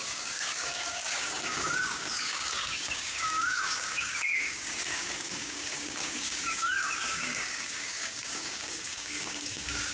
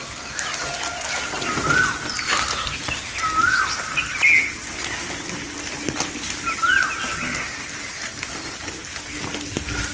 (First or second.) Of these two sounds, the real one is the second